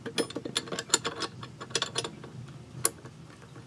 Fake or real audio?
real